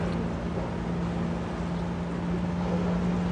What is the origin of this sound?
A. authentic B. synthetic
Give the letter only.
A